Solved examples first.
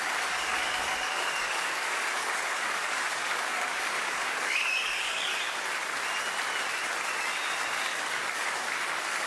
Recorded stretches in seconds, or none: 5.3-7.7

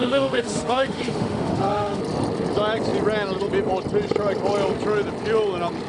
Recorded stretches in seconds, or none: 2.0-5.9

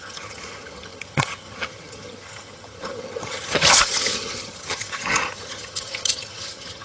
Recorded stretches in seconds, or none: none

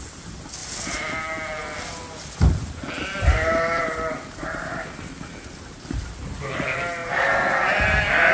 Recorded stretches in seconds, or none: 0.0-8.3

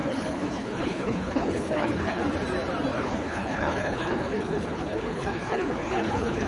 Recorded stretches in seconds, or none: 2.2-2.9

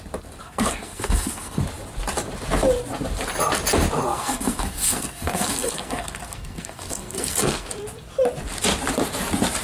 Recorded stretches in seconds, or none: 0.0-0.4; 1.6-4.1; 7.7-9.6

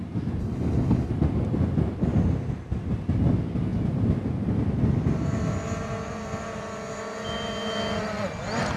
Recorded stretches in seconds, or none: 0.0-0.4; 1.1-8.8

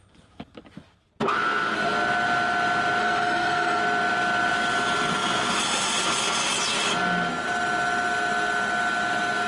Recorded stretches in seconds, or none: 0.0-3.0; 3.8-9.5